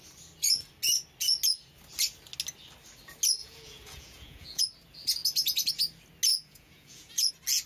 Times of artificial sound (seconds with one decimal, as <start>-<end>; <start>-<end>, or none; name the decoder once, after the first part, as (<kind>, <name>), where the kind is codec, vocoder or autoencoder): 3.4-4.6 (vocoder, Vocos); 6.3-7.3

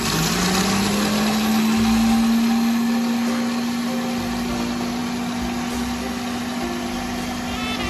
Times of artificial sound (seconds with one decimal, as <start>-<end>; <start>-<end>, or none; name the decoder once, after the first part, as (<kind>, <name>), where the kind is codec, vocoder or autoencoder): none

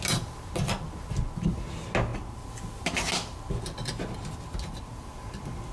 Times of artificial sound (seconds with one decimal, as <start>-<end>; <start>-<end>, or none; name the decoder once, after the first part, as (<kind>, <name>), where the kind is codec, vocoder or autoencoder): none

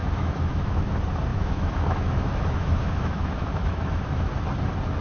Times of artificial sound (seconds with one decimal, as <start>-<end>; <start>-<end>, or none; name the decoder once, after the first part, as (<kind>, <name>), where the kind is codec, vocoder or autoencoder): 0.0-0.9 (autoencoder, DAC-VAE); 1.3-4.3

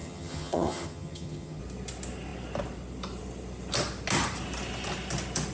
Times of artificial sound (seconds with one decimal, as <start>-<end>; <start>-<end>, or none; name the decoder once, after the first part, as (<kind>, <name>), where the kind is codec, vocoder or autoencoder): 0.0-1.6 (vocoder, HiFi-GAN)

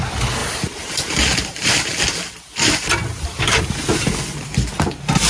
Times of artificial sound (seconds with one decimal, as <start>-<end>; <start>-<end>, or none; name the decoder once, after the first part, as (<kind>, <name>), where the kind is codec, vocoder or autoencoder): 0.4-3.6 (vocoder, BigVGAN v2)

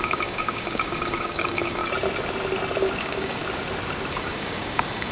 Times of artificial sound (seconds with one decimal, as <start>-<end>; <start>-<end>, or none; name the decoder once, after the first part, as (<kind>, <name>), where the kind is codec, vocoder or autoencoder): 0.0-1.8 (codec, DAC); 3.0-3.4; 4.1-5.1